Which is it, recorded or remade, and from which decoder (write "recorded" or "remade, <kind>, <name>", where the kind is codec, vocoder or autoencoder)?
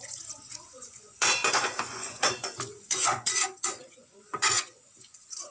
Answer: remade, vocoder, Vocos